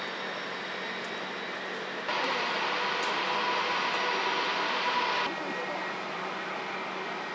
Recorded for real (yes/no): yes